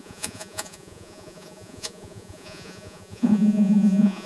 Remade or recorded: remade